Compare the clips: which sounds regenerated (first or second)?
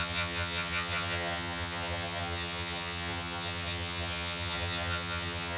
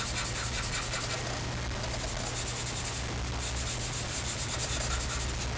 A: first